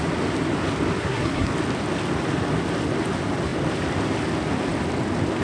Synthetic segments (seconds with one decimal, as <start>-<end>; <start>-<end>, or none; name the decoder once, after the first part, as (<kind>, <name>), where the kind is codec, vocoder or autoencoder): 1.0-1.5 (codec, SNAC)